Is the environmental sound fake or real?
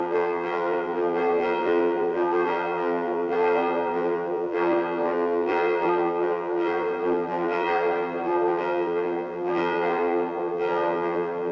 fake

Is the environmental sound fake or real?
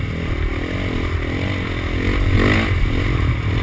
real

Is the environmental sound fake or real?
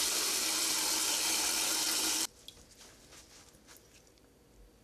real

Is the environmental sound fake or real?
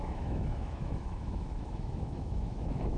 fake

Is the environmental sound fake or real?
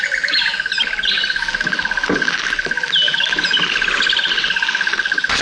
real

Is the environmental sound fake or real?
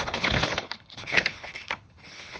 fake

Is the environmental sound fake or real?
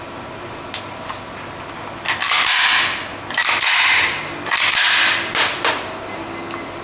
real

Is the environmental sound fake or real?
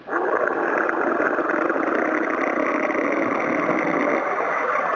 real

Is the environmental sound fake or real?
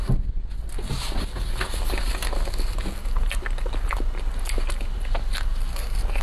real